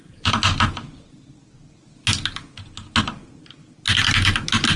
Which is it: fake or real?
real